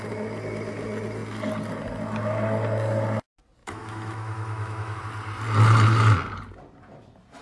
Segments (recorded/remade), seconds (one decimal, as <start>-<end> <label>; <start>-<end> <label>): 0.0-3.6 recorded; 3.6-5.0 remade; 5.0-7.4 recorded